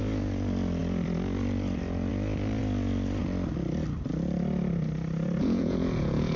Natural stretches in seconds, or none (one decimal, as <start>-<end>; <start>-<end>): 0.0-5.4